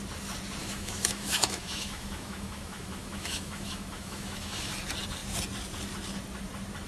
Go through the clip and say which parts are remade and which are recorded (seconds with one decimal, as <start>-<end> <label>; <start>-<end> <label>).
0.0-0.6 recorded; 0.6-4.7 remade; 4.7-6.9 recorded